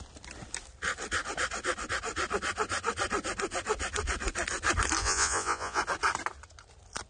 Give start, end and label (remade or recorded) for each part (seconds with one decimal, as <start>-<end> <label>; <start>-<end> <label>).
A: 0.0-5.0 recorded; 5.0-5.8 remade; 5.8-7.1 recorded